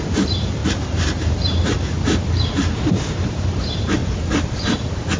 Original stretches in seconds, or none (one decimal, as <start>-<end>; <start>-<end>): 4.0-5.2